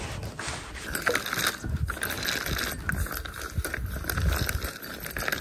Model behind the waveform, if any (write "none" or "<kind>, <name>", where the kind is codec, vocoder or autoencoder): none